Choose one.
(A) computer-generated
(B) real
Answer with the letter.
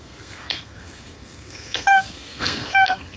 A